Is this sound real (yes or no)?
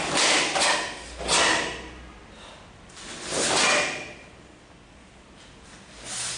yes